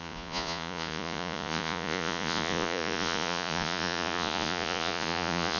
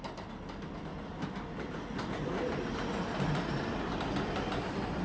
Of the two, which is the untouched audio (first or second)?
second